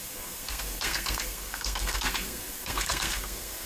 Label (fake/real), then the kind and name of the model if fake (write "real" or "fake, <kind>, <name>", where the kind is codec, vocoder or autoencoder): fake, codec, SNAC